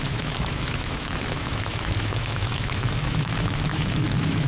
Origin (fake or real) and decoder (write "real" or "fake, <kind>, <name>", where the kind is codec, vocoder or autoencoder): fake, autoencoder, DAC-VAE